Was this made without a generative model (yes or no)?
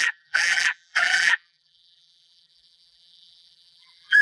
no